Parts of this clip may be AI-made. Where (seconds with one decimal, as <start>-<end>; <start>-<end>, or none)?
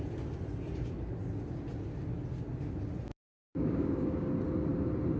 3.1-4.3